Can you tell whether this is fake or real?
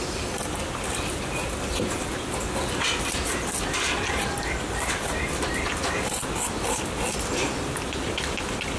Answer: real